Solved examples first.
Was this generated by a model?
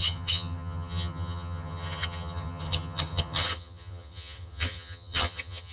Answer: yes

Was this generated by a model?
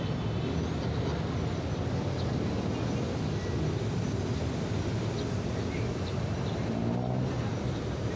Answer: no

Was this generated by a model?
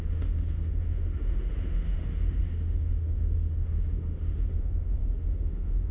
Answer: yes